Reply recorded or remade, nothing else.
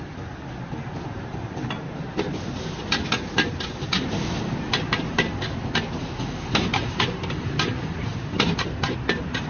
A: recorded